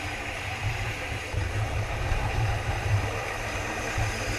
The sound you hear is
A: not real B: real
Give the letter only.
A